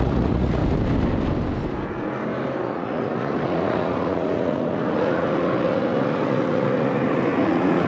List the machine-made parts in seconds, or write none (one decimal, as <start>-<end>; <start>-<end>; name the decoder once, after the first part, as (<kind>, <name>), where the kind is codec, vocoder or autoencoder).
0.0-0.6 (vocoder, Vocos); 2.6-7.9